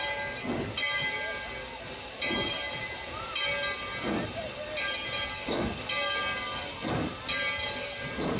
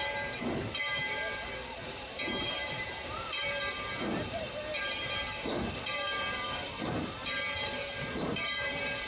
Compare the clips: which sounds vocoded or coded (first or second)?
second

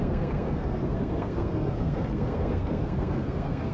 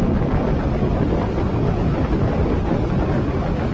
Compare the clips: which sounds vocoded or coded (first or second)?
first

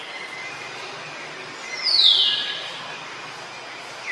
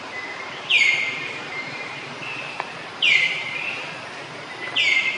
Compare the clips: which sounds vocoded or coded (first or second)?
second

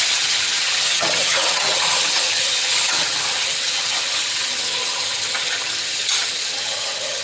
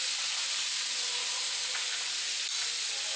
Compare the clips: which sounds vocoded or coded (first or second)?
first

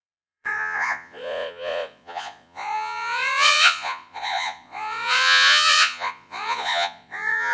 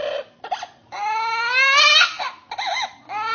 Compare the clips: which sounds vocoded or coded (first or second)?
first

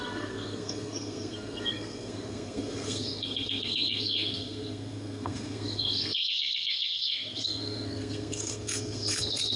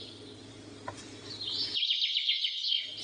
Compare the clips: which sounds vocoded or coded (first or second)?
first